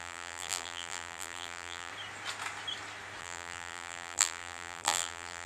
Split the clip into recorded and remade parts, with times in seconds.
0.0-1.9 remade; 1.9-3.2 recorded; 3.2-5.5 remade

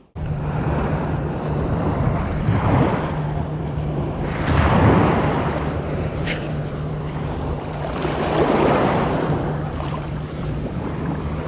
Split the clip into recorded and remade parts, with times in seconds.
0.0-11.5 remade